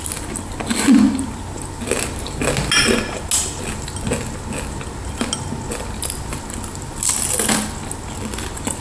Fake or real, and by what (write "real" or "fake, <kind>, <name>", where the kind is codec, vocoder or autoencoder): real